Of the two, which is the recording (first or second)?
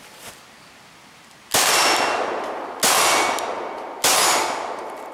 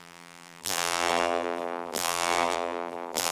first